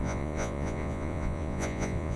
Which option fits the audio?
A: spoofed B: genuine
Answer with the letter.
A